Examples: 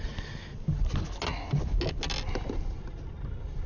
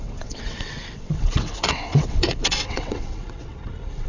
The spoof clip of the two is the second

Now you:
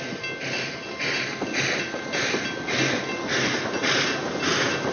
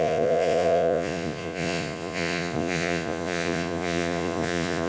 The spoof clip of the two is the second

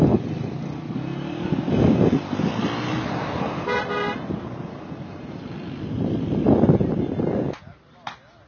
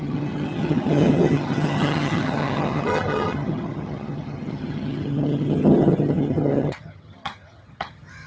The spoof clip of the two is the second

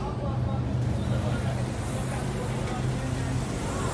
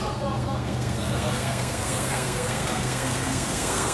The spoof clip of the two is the second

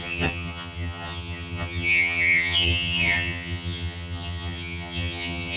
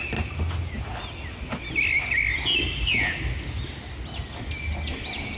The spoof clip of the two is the first